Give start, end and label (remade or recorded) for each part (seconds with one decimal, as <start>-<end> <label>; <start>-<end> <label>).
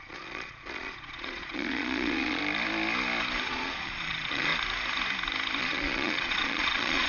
0.0-2.4 remade; 2.4-3.4 recorded; 3.4-4.5 remade; 4.5-5.6 recorded; 5.6-7.1 remade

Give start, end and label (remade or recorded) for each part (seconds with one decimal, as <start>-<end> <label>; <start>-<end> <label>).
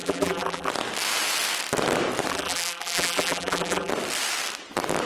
0.0-0.7 remade; 0.7-2.3 recorded; 2.3-3.9 remade; 3.9-5.1 recorded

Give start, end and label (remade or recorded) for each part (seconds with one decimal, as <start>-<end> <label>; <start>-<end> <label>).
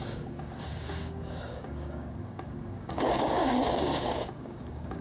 0.0-5.0 remade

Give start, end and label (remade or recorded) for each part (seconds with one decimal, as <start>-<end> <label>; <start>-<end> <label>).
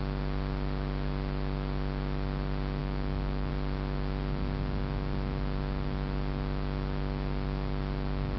0.0-2.8 recorded; 2.8-3.5 remade; 3.5-8.4 recorded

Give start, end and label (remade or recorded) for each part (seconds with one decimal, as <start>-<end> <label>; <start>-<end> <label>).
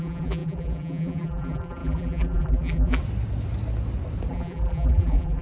0.0-3.0 remade; 3.0-4.3 recorded; 4.3-5.4 remade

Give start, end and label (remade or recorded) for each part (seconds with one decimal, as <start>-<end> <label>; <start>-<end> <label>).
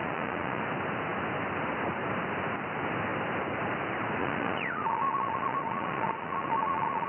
0.0-0.6 remade; 0.6-4.2 recorded; 4.2-7.1 remade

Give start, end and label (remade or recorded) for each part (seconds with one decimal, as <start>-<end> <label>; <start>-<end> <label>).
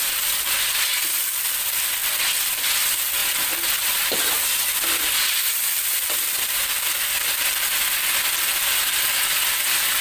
0.0-10.0 recorded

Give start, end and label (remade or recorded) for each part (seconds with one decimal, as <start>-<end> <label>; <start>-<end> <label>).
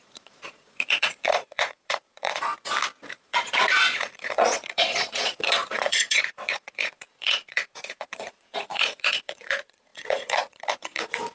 0.0-2.5 remade; 2.5-3.1 recorded; 3.1-11.3 remade